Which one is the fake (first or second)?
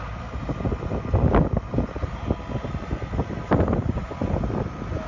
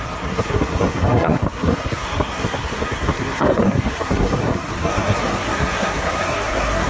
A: second